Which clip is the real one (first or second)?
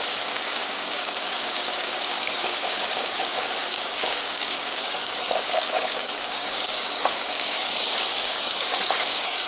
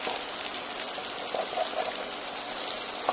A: second